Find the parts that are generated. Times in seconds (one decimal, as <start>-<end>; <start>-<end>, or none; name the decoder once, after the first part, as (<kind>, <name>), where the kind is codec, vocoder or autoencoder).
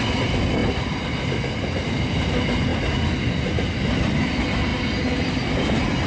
none